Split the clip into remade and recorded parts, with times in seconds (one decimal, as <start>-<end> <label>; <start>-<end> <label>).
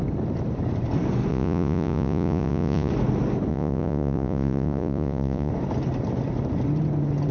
0.0-1.3 recorded; 1.3-2.9 remade; 2.9-3.5 recorded; 3.5-5.5 remade; 5.5-7.3 recorded